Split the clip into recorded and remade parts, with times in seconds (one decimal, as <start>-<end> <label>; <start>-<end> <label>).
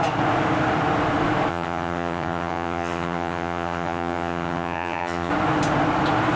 0.0-1.5 recorded; 1.5-5.3 remade; 5.3-6.4 recorded